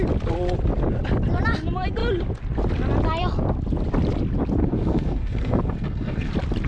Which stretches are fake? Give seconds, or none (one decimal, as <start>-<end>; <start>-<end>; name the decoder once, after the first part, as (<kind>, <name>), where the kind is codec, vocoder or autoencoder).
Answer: 4.6-6.3 (codec, SNAC)